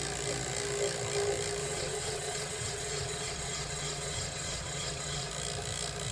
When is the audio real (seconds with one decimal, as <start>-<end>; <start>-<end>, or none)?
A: 0.0-1.6; 5.3-6.1